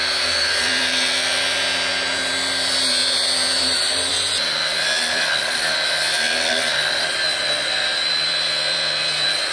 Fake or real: fake